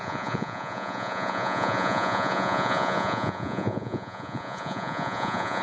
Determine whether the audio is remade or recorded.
remade